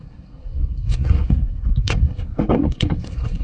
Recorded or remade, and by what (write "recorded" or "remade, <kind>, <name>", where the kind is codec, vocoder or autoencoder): remade, codec, SNAC